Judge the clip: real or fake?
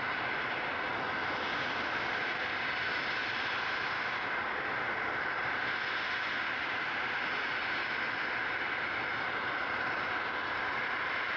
real